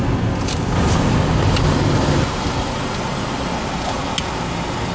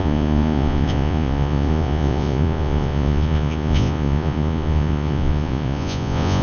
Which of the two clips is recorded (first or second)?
first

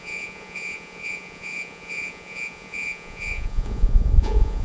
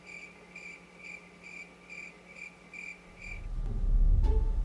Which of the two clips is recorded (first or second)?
second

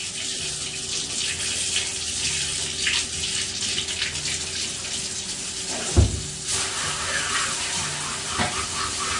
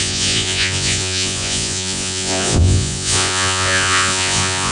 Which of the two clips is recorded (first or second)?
first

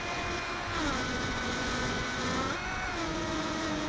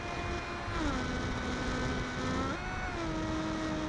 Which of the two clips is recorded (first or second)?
second